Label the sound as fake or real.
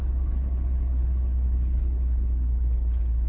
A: fake